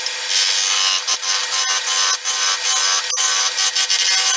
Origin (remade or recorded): recorded